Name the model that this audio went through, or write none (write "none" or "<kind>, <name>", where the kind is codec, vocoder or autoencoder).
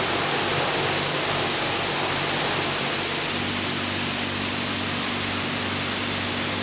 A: none